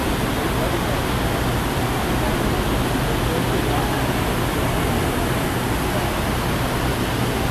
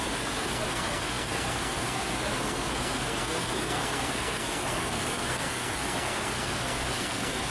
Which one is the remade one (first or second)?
second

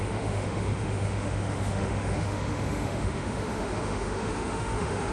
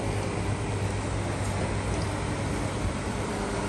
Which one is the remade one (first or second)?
first